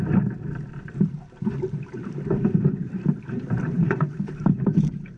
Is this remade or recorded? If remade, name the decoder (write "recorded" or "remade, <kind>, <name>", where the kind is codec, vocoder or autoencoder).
remade, vocoder, BigVGAN v2